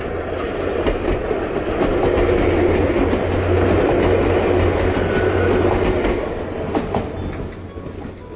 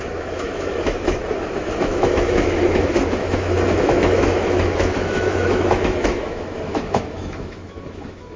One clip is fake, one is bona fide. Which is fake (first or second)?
second